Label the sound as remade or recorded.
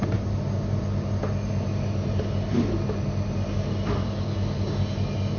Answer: recorded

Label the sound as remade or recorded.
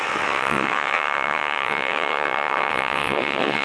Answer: remade